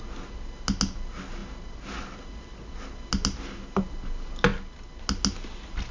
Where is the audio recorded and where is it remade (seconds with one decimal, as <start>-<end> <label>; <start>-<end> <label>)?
0.0-5.9 recorded